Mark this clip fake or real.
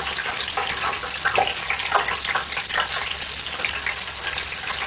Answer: real